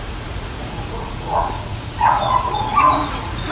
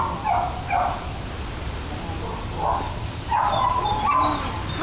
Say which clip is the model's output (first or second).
first